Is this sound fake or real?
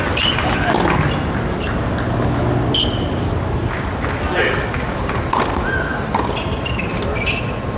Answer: real